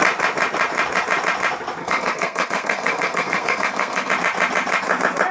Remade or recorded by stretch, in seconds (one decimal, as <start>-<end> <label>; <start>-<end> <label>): 0.0-1.8 recorded; 1.8-4.1 remade; 4.1-5.3 recorded